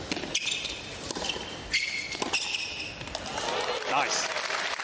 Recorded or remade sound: recorded